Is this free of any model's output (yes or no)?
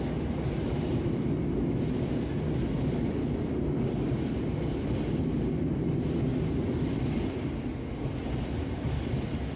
yes